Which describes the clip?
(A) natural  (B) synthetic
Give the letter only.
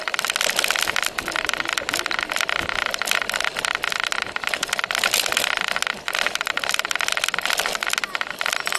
A